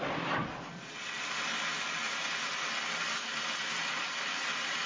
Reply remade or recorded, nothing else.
recorded